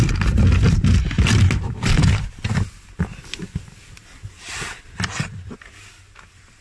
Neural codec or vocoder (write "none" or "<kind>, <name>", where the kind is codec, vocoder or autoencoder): none